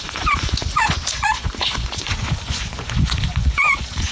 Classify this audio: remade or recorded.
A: remade